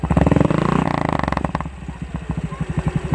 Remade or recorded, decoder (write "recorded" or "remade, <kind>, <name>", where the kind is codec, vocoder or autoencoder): recorded